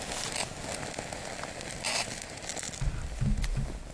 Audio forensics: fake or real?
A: real